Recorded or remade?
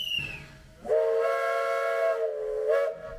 recorded